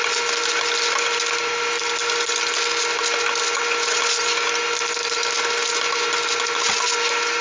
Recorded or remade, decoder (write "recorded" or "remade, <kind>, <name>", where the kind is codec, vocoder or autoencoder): recorded